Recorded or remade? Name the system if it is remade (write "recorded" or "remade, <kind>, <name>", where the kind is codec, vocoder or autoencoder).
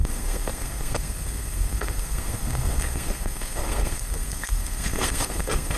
remade, codec, SNAC